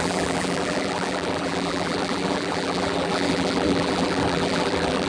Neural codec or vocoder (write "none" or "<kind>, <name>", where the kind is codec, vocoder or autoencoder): vocoder, BigVGAN v2